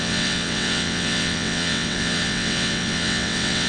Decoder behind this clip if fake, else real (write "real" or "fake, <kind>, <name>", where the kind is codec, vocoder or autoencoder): fake, vocoder, WaveNeXt